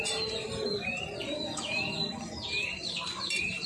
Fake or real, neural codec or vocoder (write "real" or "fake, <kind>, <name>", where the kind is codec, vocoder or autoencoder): fake, vocoder, BigVGAN v2